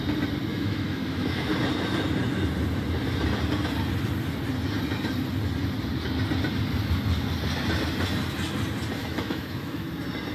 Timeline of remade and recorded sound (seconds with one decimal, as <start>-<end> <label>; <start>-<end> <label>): 0.0-0.5 recorded; 0.5-1.5 remade; 1.5-9.0 recorded; 9.0-9.9 remade; 9.9-10.3 recorded